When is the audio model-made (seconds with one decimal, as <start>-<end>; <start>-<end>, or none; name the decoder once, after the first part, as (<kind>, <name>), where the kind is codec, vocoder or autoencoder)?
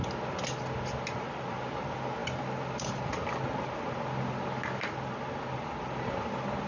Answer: none